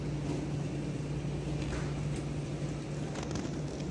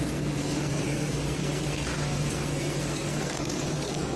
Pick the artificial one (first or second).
second